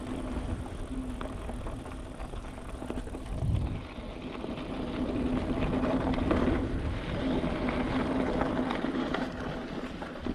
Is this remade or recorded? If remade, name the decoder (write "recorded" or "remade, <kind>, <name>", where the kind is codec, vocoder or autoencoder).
recorded